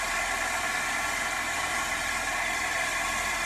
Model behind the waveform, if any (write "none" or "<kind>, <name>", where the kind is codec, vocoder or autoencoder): none